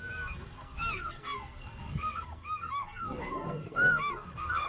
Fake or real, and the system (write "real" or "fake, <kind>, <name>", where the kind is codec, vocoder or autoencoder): fake, codec, SNAC